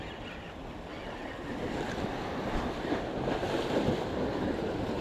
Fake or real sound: real